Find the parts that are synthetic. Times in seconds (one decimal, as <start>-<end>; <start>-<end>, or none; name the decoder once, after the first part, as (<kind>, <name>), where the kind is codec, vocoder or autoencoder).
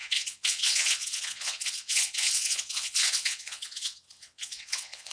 0.0-5.1 (vocoder, WaveNeXt)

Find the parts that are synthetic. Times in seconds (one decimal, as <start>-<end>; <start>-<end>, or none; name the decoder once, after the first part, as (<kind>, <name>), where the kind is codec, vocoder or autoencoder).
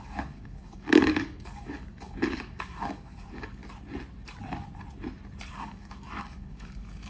0.0-3.6 (codec, DAC); 5.5-7.1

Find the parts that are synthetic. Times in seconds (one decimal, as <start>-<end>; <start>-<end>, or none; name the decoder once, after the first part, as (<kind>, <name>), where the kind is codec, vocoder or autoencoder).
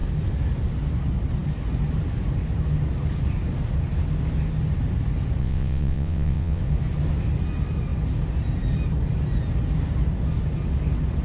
5.4-6.6 (vocoder, WaveNeXt)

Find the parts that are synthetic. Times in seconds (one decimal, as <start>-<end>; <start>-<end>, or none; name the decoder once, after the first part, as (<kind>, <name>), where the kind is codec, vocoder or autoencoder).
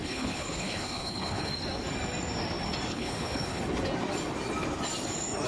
0.0-1.5 (codec, HILCodec); 2.9-3.6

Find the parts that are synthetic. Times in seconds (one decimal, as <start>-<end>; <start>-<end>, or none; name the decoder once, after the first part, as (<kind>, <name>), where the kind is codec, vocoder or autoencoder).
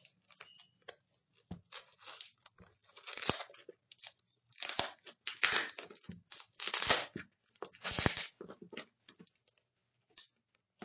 none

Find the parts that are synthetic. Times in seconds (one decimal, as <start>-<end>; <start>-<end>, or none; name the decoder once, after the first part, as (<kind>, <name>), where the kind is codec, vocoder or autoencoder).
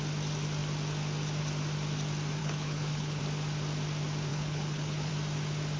2.4-3.2 (codec, HILCodec); 4.3-5.1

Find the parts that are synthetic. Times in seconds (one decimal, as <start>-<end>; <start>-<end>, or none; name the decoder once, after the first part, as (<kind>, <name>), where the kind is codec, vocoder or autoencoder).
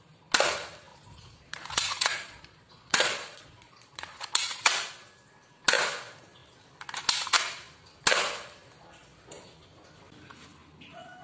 0.9-4.9 (vocoder, Vocos)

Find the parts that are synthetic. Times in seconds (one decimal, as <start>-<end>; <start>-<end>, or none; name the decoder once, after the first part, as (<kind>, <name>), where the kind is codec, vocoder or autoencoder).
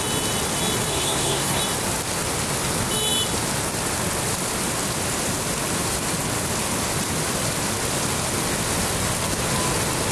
0.9-1.6 (codec, SNAC)